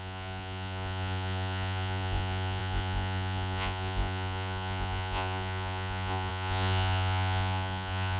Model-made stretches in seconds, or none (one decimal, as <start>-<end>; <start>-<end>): 0.0-8.2